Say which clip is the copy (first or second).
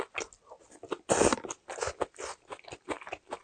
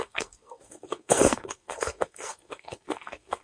second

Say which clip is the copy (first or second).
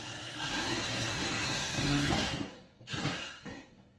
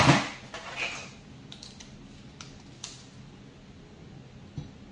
first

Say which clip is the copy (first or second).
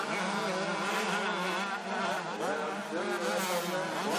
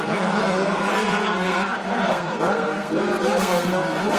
second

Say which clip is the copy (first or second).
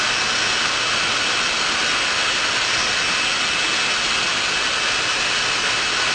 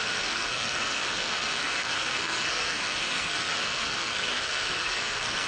second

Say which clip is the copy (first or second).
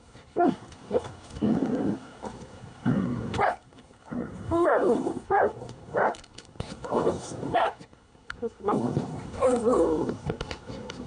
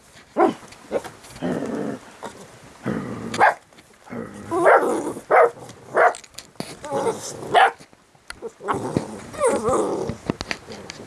first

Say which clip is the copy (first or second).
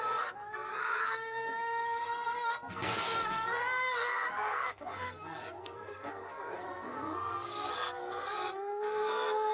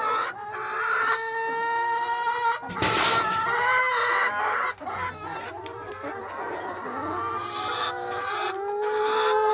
first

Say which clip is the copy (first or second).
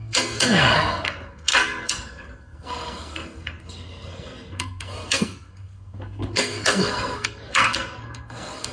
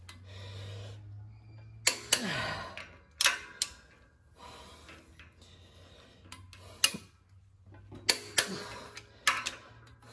first